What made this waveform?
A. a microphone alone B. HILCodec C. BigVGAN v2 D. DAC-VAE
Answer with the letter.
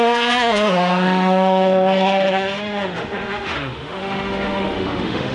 D